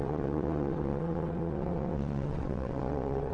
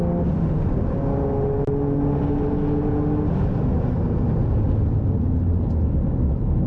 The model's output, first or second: first